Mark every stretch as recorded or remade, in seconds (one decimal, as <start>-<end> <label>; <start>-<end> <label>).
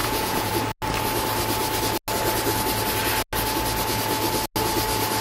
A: 0.0-0.5 remade; 0.5-5.2 recorded